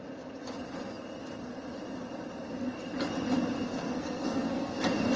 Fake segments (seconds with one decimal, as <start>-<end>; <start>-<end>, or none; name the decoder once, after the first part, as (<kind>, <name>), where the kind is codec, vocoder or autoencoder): 3.6-4.8 (codec, SNAC)